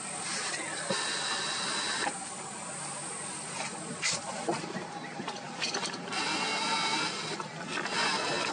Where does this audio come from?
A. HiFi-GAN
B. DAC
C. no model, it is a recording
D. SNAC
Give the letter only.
C